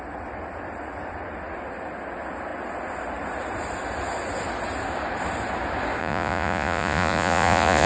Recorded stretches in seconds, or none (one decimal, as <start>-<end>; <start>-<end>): 0.0-6.0